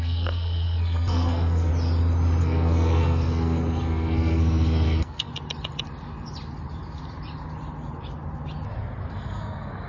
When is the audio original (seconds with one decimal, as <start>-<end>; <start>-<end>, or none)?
1.7-2.4; 5.3-9.1